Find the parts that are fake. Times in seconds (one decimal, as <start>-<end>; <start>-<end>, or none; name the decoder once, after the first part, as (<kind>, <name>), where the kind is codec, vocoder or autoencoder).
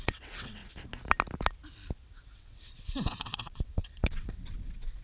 0.0-0.6 (vocoder, WaveNeXt); 2.0-5.0